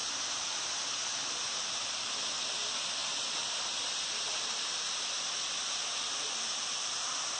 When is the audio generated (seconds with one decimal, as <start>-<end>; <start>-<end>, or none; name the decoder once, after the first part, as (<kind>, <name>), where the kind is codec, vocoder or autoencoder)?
none